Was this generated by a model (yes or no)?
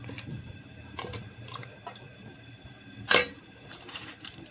yes